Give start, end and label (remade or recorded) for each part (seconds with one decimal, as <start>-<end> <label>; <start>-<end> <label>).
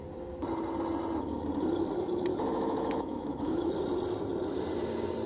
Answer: 0.0-2.3 recorded; 2.3-3.7 remade; 3.7-5.3 recorded